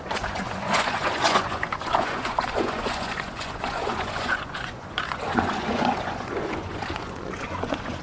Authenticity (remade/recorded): remade